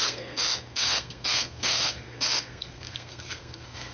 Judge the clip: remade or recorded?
remade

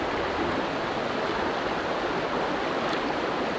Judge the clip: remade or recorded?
recorded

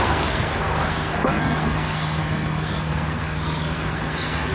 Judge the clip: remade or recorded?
remade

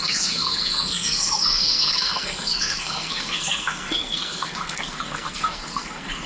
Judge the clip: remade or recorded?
remade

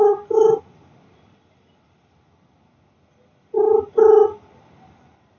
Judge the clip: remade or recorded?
recorded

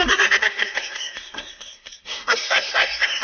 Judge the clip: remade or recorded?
remade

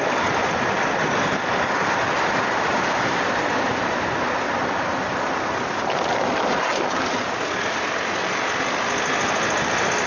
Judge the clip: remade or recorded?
recorded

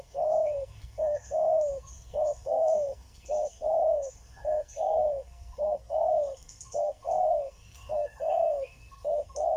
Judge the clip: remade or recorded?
remade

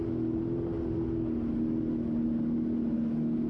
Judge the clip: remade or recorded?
recorded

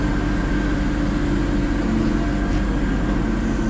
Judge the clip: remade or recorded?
recorded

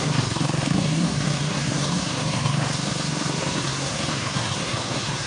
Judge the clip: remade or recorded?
remade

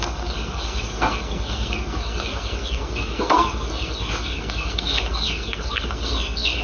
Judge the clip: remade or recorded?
remade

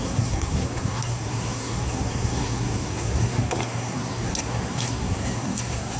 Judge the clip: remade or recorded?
remade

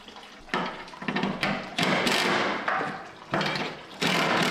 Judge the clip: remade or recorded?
recorded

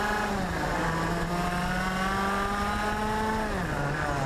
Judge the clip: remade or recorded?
recorded